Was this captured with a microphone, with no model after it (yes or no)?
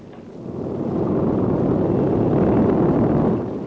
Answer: yes